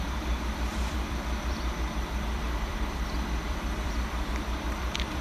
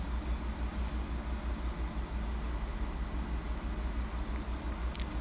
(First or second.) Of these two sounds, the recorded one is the second